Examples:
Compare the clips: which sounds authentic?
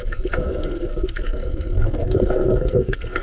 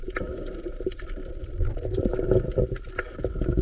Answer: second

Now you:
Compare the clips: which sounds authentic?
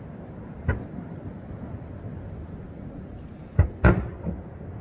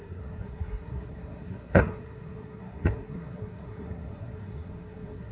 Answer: first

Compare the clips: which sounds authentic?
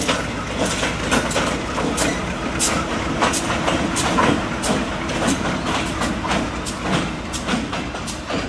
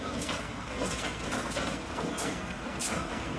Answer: first